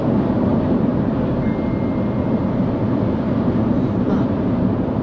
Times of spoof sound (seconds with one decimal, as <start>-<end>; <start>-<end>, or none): none